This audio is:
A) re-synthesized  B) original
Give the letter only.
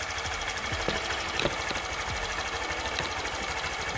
B